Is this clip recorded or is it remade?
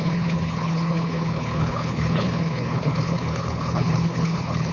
remade